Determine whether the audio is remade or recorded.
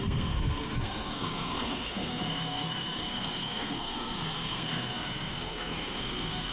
remade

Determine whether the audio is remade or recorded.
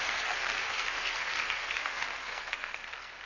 remade